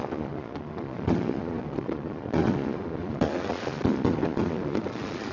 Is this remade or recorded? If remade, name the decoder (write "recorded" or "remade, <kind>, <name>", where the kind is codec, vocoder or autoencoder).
remade, vocoder, Vocos